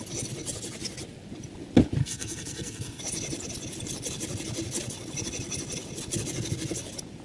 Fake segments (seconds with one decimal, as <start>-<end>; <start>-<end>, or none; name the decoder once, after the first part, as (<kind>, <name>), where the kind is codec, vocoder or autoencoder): 2.0-3.0 (codec, SNAC)